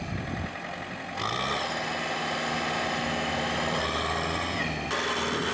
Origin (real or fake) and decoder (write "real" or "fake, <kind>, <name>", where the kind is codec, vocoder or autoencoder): real